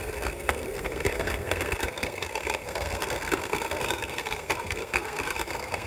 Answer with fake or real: fake